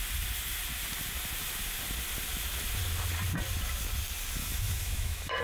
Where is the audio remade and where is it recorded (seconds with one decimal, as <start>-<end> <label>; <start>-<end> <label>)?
0.0-4.4 recorded; 4.4-5.4 remade